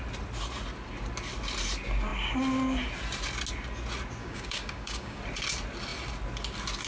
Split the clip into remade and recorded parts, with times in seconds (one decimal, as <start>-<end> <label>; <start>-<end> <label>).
0.0-4.2 recorded; 4.2-5.2 remade; 5.2-6.9 recorded